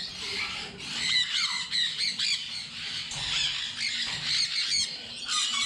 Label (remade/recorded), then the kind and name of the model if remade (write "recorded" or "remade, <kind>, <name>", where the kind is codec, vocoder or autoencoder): recorded